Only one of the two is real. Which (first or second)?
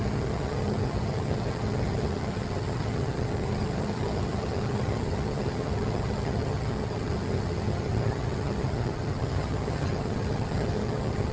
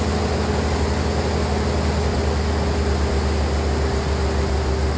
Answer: second